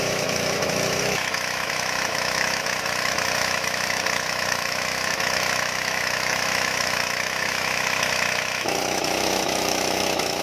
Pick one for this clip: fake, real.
fake